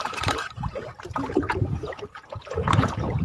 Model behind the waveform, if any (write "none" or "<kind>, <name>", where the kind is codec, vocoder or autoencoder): vocoder, BigVGAN v2